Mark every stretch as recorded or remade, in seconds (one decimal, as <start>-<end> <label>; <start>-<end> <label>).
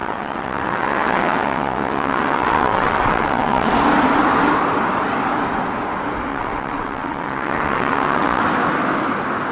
0.0-3.7 remade; 3.7-6.3 recorded; 6.3-8.4 remade; 8.4-9.5 recorded